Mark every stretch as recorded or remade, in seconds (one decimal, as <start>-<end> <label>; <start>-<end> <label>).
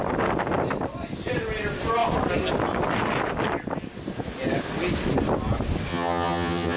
0.0-5.9 recorded; 5.9-6.8 remade